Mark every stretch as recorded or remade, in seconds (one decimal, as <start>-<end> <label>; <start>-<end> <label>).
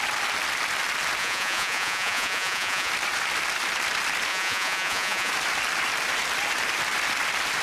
0.0-1.2 recorded; 1.2-2.9 remade; 2.9-4.3 recorded; 4.3-5.3 remade; 5.3-7.6 recorded